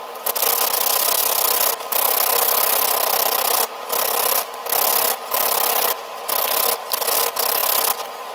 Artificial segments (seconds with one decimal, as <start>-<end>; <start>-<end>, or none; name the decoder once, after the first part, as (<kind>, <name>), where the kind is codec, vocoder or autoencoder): none